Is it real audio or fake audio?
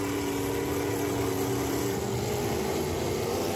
real